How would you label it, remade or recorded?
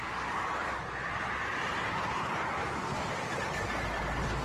remade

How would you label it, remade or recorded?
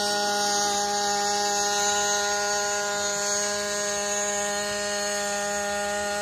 recorded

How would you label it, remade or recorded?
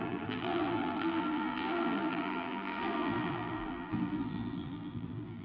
remade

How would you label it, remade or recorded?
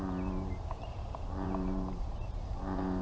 remade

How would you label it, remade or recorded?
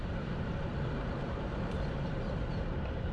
remade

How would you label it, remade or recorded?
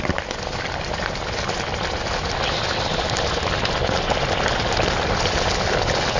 recorded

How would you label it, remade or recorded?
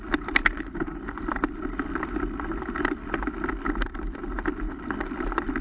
remade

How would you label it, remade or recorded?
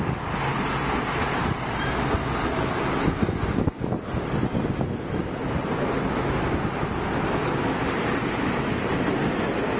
recorded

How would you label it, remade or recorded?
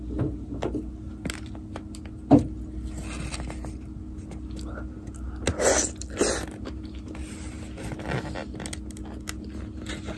recorded